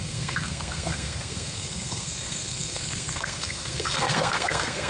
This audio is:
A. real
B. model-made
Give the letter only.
B